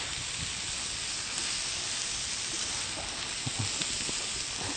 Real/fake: real